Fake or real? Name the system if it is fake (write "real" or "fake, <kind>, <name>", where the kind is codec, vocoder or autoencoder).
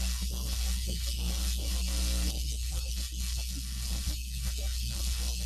fake, codec, SNAC